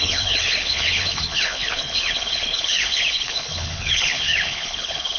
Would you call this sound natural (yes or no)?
no